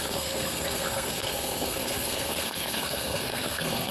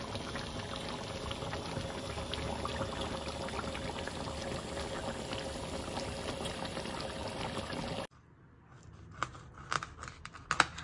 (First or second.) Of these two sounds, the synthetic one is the first